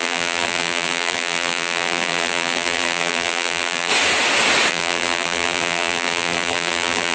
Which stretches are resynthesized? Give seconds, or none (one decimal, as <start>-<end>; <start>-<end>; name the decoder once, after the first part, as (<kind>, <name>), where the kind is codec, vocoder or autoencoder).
0.0-3.9 (vocoder, BigVGAN v2); 4.7-7.1